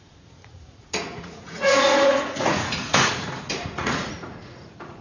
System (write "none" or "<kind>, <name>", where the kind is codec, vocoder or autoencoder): vocoder, Vocos